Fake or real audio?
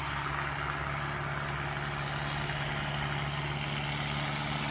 real